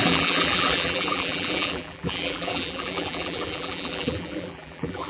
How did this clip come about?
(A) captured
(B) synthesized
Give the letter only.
B